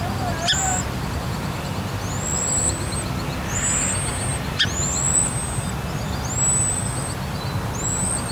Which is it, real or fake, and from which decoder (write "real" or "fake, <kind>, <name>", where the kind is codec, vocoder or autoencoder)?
real